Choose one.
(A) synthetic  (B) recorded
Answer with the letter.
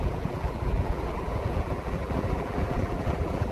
A